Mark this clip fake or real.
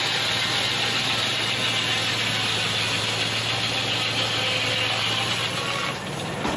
real